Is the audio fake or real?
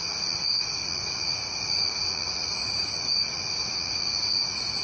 fake